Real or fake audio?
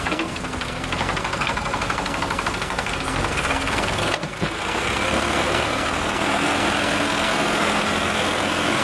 fake